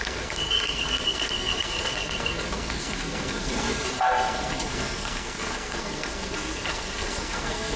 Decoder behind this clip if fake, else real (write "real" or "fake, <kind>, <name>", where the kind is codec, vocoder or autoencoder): fake, codec, SNAC